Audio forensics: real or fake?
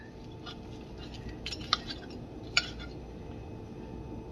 real